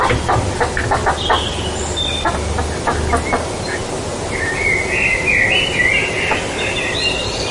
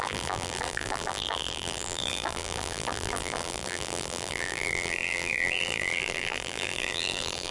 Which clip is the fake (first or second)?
second